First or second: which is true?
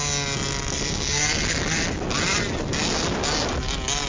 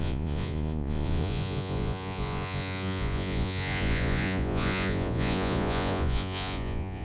first